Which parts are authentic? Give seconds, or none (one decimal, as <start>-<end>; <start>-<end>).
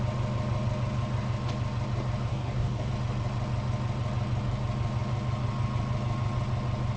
0.0-2.3; 2.9-7.0